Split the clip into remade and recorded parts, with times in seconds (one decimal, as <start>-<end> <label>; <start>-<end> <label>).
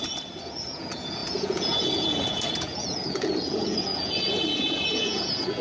0.0-5.6 remade